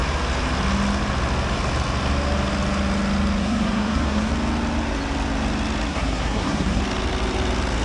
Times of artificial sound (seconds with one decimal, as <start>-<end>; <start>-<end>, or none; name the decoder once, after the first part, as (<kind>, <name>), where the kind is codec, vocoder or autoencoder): 3.4-4.3 (codec, SNAC); 5.9-6.8